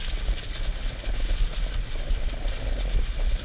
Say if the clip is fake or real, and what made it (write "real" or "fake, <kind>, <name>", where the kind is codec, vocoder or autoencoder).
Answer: real